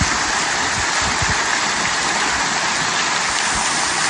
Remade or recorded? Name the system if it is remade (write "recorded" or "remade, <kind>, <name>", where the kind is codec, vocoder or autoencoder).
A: recorded